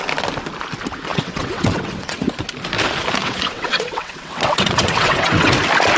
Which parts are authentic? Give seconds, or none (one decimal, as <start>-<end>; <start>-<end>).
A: 0.0-1.1; 2.3-3.2; 5.5-6.0